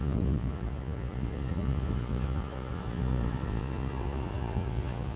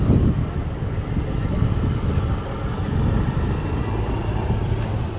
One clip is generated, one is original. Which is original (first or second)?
second